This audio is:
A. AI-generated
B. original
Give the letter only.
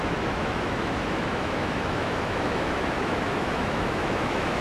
A